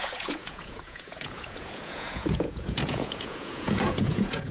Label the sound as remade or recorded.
remade